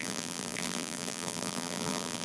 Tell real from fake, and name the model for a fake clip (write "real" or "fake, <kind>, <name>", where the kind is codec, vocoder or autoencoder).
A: fake, vocoder, BigVGAN v2